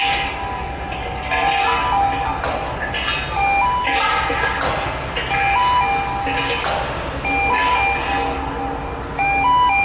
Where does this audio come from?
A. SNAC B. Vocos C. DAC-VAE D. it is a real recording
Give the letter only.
D